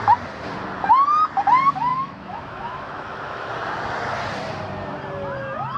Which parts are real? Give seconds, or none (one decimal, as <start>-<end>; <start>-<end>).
0.0-1.9; 3.5-5.8